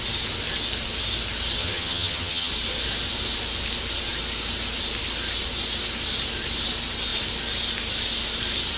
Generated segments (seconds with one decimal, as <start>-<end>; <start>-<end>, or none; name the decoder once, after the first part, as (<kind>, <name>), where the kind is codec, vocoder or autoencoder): 1.6-2.5 (vocoder, HiFi-GAN)